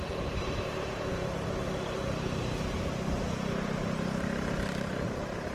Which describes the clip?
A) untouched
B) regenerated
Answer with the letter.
B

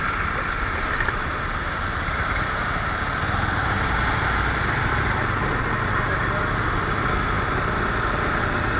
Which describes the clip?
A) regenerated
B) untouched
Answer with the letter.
B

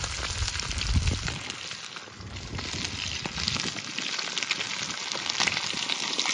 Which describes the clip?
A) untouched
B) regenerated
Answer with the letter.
A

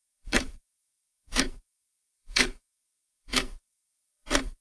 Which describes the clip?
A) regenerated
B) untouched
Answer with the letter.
A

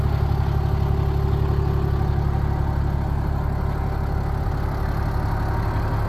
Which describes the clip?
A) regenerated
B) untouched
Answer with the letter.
B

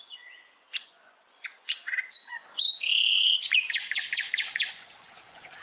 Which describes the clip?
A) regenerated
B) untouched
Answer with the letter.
A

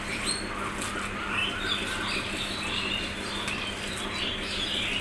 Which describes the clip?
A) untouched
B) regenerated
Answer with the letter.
A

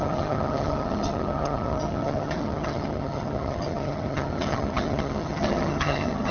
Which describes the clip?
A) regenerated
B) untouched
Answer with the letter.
A